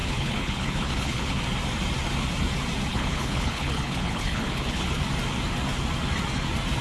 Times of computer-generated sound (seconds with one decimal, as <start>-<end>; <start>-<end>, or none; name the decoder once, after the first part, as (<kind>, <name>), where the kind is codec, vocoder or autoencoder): 0.0-1.4 (codec, HILCodec); 2.9-5.0